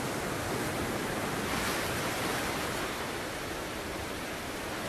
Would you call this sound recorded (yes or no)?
yes